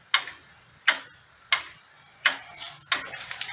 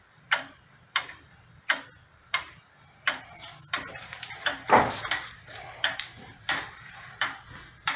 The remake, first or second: second